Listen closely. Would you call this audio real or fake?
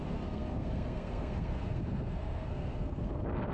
fake